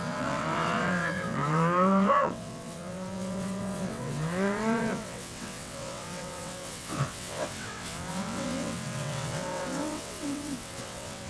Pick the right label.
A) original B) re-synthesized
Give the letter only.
B